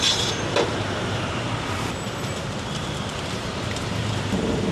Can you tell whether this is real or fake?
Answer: fake